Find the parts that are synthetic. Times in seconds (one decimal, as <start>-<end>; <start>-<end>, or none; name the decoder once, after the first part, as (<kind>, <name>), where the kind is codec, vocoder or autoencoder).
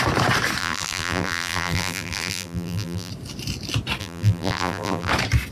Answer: 0.6-3.1 (vocoder, BigVGAN v2); 4.0-5.1